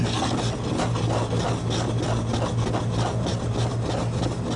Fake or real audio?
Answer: real